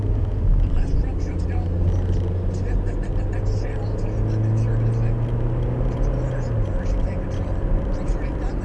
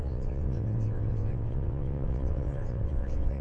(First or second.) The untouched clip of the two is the first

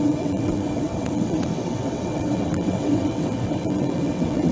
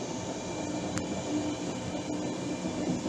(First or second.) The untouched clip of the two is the second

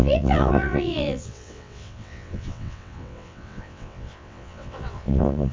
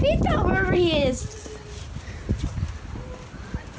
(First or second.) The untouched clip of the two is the second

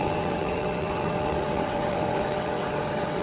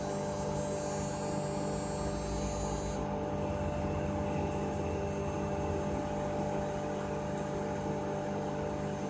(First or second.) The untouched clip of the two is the second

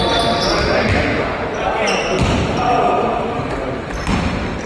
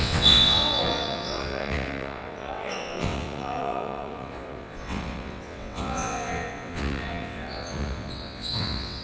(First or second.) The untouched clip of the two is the first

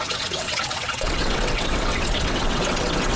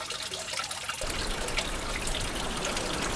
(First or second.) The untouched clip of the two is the second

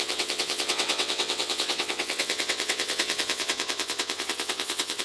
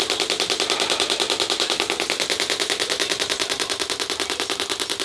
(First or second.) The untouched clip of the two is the second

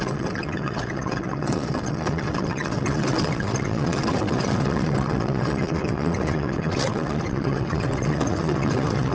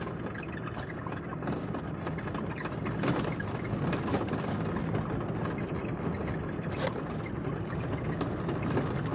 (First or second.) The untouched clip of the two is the second